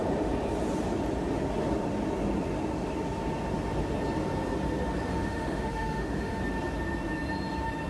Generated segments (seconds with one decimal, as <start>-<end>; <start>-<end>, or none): 5.1-6.4